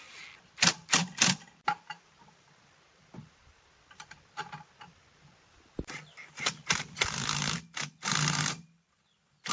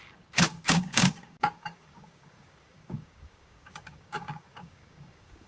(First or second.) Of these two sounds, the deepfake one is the second